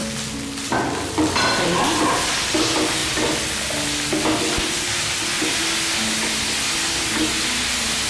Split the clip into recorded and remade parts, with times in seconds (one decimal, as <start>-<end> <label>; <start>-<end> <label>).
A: 0.0-8.1 recorded